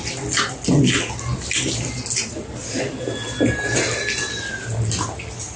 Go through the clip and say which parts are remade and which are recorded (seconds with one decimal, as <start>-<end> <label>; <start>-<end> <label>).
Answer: 0.0-5.6 recorded